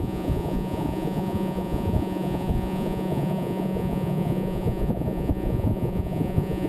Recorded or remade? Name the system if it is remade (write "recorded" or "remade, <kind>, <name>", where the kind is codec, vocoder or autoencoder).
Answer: remade, vocoder, Vocos